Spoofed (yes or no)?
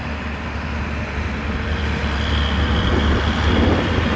no